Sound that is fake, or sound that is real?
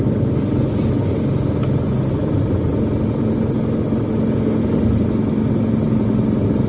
real